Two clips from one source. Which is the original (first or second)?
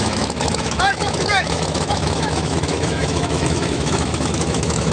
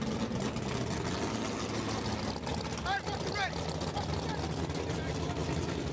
second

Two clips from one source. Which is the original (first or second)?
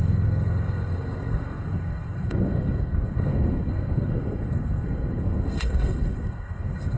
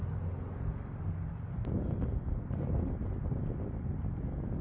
second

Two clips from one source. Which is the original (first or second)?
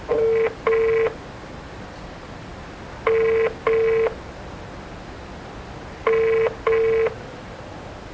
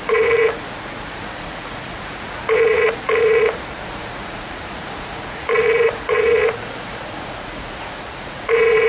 first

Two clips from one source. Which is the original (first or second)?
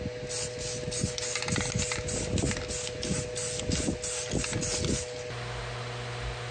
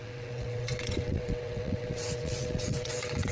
first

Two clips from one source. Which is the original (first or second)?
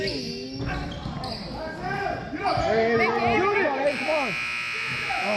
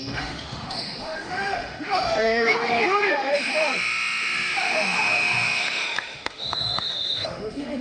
first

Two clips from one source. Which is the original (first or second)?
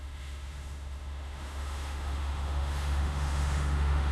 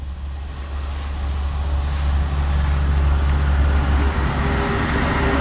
second